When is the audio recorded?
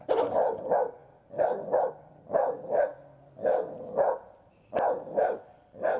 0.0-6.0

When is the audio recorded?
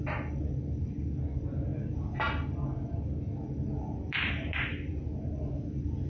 0.0-6.1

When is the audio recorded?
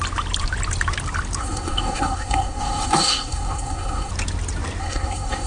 0.0-1.4; 4.1-4.8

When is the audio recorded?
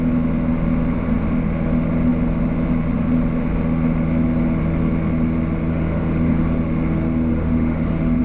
0.0-5.7; 6.6-7.3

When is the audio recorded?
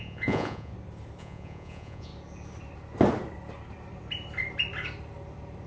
0.7-1.2; 2.1-5.7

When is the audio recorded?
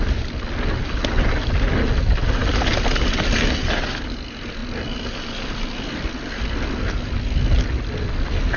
0.0-8.6